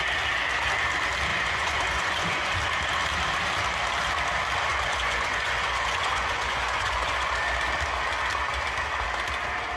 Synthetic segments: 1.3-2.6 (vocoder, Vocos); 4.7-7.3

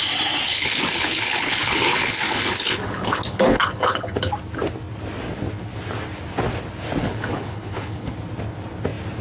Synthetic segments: 0.5-4.3 (codec, HILCodec); 7.0-8.2

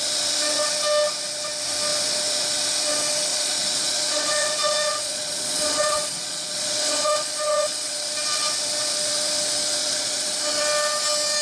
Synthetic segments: 3.3-7.9 (vocoder, Vocos); 9.8-10.4